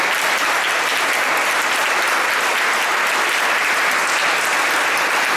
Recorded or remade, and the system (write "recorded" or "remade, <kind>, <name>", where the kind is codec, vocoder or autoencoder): recorded